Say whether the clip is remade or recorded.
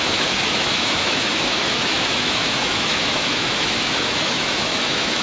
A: remade